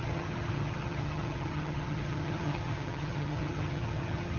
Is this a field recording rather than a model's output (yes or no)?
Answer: no